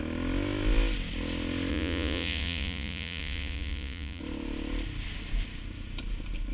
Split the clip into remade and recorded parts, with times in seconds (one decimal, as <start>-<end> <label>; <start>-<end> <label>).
0.0-1.7 recorded; 1.7-4.2 remade; 4.2-6.5 recorded